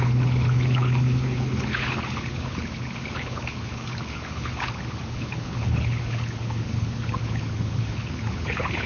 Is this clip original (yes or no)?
no